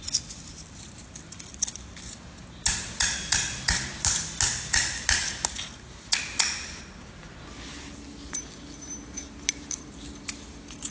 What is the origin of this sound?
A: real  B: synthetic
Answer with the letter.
A